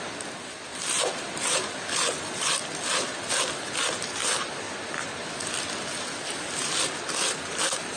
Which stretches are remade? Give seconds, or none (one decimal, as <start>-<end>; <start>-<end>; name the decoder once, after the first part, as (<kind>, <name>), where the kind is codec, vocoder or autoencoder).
0.7-2.6 (vocoder, BigVGAN v2); 4.2-5.5